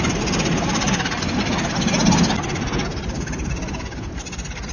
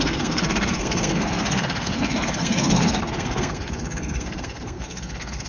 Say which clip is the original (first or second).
first